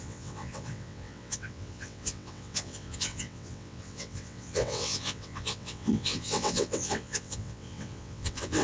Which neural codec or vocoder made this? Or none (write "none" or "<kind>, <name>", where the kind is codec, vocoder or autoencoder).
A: vocoder, WaveNeXt